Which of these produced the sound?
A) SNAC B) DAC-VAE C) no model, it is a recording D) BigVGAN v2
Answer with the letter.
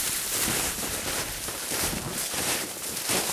D